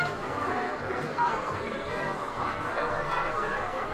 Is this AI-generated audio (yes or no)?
yes